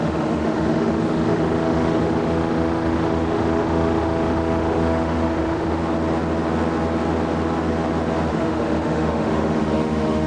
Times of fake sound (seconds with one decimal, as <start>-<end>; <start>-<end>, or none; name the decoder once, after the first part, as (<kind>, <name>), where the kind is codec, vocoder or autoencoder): 0.0-5.8 (autoencoder, DAC-VAE); 8.3-10.3